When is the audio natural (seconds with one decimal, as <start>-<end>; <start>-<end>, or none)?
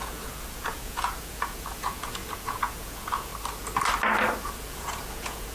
3.3-4.4